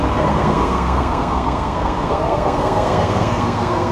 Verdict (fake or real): fake